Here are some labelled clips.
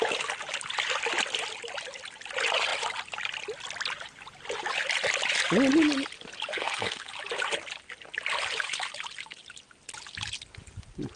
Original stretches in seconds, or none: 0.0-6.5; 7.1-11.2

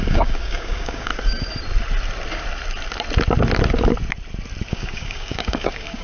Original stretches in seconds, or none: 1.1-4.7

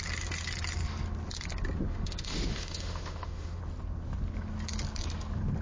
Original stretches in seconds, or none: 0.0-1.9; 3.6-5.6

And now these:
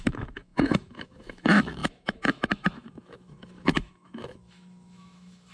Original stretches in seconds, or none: none

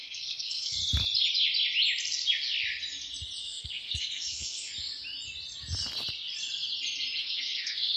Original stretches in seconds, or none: 0.8-3.4; 4.7-7.2